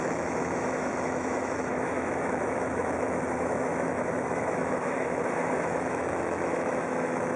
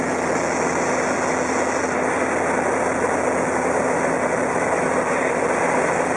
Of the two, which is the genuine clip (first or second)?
second